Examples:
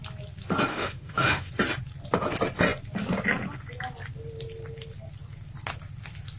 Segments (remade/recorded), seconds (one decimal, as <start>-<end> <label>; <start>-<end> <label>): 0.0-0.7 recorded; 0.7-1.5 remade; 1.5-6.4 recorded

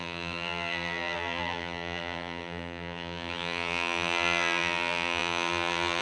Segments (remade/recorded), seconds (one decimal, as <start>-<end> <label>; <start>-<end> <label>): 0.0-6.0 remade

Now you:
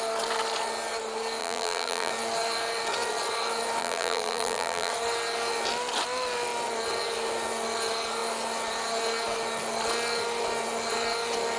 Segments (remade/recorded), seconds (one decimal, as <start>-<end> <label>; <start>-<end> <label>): 0.0-1.4 recorded; 1.4-2.1 remade; 2.1-3.8 recorded; 3.8-4.9 remade; 4.9-11.6 recorded

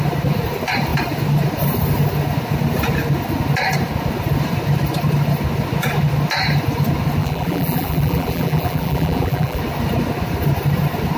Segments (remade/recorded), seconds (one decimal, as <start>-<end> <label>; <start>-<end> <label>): 0.0-7.2 recorded; 7.2-9.6 remade; 9.6-11.2 recorded

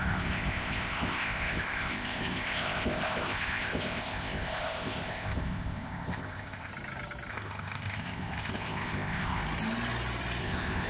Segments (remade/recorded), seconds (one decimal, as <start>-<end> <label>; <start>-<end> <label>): 0.0-6.7 remade; 6.7-7.3 recorded; 7.3-9.4 remade; 9.4-10.4 recorded; 10.4-10.9 remade

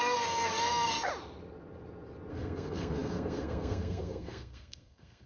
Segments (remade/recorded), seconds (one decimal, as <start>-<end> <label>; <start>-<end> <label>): 0.0-1.1 remade; 1.1-2.3 recorded; 2.3-5.3 remade

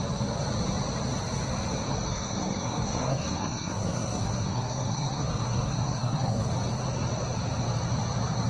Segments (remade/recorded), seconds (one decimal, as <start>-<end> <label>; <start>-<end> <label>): 0.0-2.1 recorded; 2.1-6.5 remade; 6.5-8.5 recorded